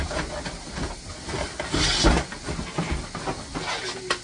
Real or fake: real